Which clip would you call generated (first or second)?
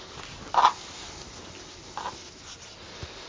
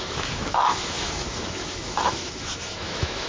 second